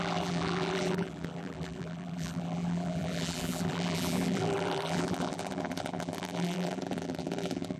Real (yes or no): no